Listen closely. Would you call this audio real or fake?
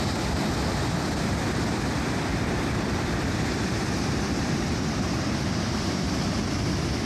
fake